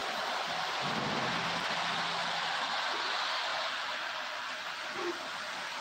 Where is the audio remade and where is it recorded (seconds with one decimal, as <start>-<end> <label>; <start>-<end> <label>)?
0.0-5.8 recorded